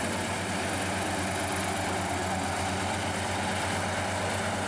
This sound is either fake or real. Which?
real